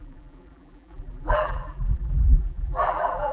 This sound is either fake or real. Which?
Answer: fake